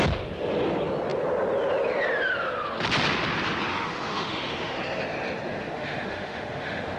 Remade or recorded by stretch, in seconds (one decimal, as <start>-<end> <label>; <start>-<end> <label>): 0.0-3.7 recorded; 3.7-4.8 remade; 4.8-5.6 recorded; 5.6-7.0 remade